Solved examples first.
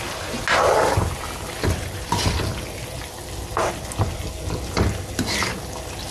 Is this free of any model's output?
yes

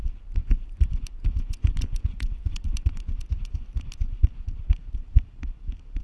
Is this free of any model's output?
no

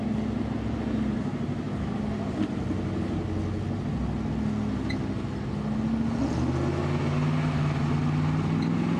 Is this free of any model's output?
yes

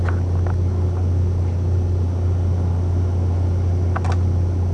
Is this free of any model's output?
yes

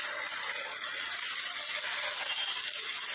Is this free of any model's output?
yes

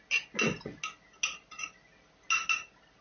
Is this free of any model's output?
yes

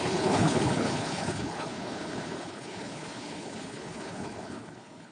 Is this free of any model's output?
no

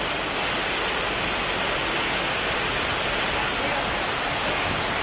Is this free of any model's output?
yes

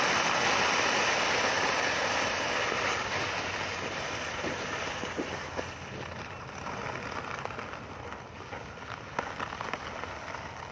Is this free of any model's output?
yes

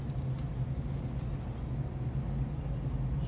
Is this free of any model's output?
yes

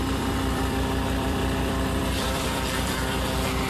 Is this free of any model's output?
no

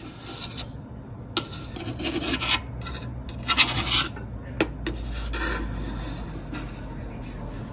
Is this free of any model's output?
yes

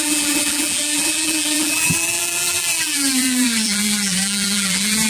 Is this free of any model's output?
no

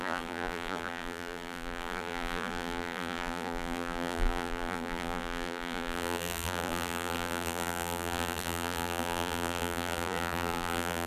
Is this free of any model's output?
no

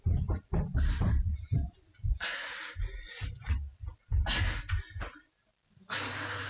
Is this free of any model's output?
yes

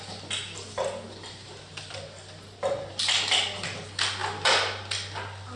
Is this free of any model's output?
yes